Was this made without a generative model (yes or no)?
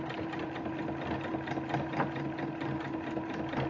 yes